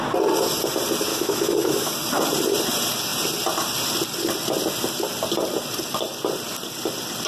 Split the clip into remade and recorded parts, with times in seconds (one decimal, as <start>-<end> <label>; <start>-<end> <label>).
0.0-1.1 recorded; 1.1-1.9 remade; 1.9-7.3 recorded